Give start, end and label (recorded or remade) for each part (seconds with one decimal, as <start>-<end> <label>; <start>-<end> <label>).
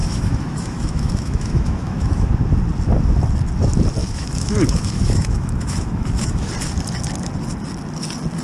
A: 0.0-2.3 remade; 2.3-4.0 recorded; 4.0-6.5 remade; 6.5-8.4 recorded